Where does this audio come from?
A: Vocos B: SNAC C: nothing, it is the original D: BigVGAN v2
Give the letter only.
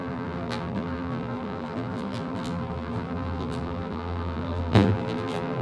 D